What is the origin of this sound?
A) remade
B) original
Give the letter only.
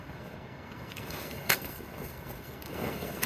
A